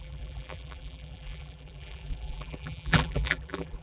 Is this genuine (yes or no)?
no